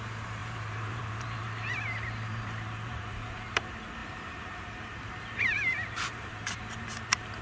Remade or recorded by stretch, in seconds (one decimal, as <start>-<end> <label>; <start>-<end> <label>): 0.0-7.4 remade